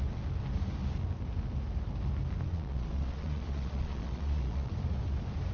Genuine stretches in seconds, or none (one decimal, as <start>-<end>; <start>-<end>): 0.0-2.5; 4.7-5.5

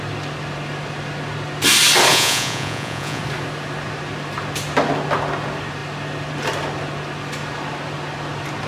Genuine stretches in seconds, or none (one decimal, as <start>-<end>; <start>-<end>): 0.0-2.1; 3.2-8.7

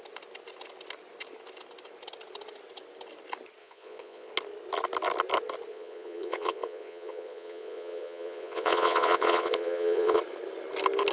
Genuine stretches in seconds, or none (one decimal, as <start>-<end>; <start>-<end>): 0.0-3.6; 4.3-5.7; 10.2-11.1

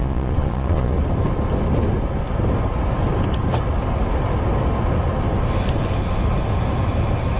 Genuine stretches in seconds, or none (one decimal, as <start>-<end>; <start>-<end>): 1.0-7.4

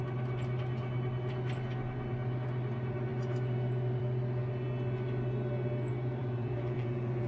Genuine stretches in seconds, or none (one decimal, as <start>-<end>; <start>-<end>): 0.0-6.2

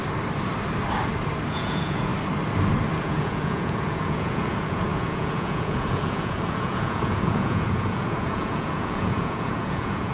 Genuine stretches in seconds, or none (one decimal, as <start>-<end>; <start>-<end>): 0.0-1.5; 2.1-2.9